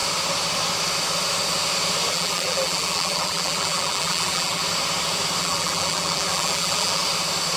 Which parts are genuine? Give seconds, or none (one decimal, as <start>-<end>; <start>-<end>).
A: 0.0-2.1; 4.6-5.4; 7.0-7.6